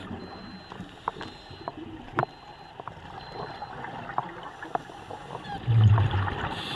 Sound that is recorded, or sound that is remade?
recorded